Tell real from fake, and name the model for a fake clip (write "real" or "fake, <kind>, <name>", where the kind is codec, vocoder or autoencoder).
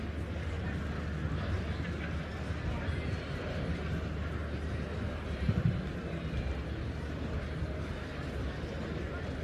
real